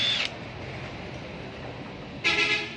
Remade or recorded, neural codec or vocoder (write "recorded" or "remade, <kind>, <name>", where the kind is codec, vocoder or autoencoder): recorded